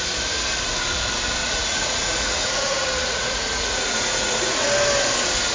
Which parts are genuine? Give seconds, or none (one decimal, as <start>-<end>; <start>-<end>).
0.0-1.4; 4.7-5.5